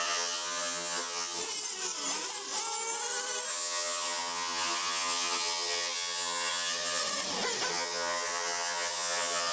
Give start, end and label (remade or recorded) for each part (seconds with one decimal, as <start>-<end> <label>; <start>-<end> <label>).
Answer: 0.0-1.4 remade; 1.4-3.5 recorded; 3.5-7.0 remade; 7.0-7.7 recorded; 7.7-9.5 remade